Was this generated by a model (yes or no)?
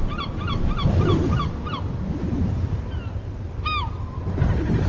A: no